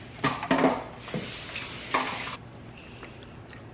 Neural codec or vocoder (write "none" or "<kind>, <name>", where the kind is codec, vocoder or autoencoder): none